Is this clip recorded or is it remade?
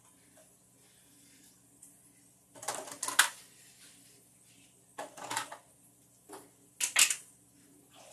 recorded